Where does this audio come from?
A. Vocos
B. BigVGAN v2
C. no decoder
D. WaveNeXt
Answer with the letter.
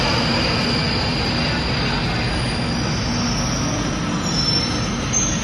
C